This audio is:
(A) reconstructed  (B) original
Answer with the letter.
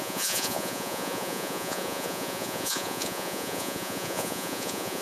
A